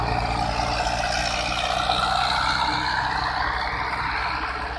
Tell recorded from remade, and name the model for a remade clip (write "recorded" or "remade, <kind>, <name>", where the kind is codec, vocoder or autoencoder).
recorded